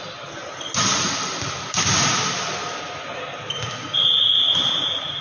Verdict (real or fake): real